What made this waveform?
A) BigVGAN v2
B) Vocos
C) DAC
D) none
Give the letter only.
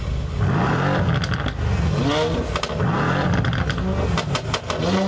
D